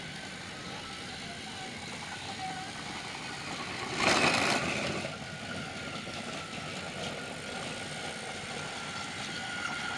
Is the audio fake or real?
real